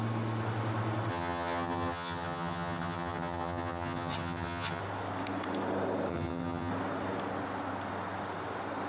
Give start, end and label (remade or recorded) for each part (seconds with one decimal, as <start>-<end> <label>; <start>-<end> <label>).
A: 0.0-1.1 recorded; 1.1-4.8 remade; 4.8-6.1 recorded; 6.1-6.7 remade; 6.7-8.9 recorded